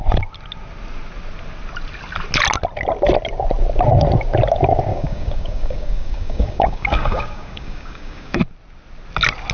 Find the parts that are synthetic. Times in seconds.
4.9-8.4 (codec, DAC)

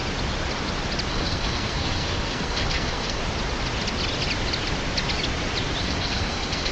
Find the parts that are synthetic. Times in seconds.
1.1-3.2 (codec, SNAC); 5.8-6.7

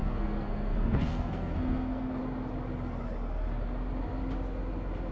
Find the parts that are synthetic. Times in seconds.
0.0-2.2 (codec, SNAC)